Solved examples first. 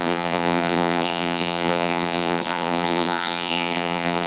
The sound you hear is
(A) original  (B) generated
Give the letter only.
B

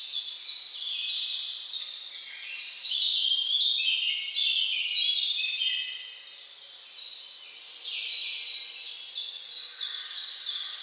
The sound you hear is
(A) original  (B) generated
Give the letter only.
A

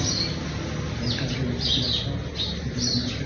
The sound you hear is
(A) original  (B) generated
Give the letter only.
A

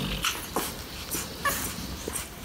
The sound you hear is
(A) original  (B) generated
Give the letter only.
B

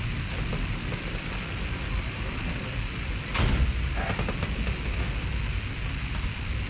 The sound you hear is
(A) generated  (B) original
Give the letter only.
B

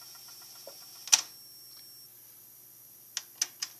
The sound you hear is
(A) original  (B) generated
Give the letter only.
A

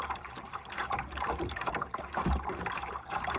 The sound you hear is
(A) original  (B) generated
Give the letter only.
B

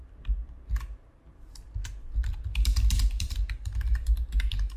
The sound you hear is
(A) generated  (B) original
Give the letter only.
B